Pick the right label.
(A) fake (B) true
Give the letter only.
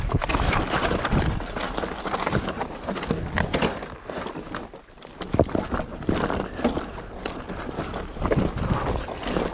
B